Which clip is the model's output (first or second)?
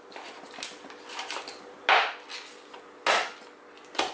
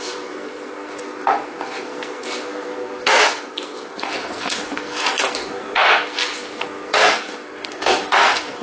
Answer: second